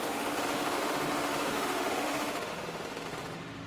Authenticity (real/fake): fake